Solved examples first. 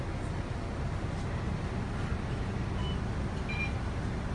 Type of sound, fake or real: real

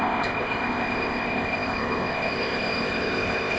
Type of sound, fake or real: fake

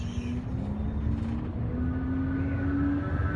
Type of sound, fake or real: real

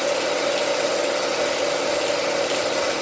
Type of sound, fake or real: real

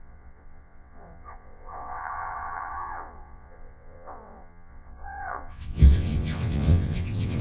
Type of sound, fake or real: fake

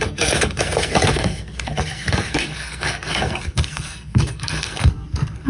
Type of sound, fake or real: fake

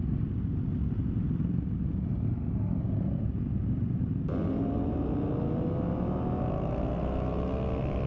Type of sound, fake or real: real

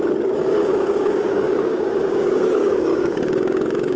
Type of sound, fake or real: fake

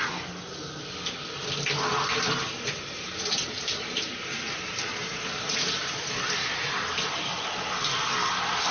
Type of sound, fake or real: real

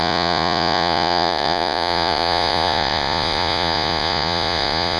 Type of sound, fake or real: fake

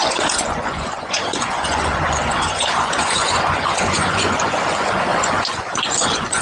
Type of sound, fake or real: fake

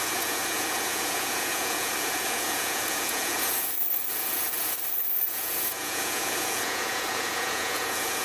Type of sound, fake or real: fake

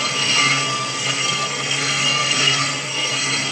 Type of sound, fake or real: fake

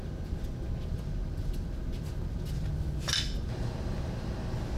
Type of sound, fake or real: real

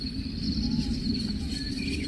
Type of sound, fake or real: real